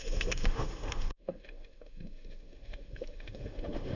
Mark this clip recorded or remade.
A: remade